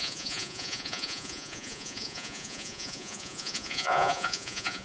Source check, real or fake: fake